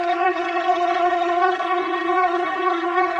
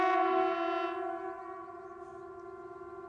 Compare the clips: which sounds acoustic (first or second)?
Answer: second